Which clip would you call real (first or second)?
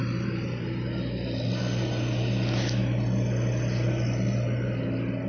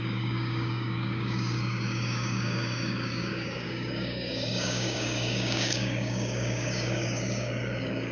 first